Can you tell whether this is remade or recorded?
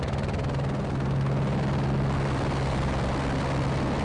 recorded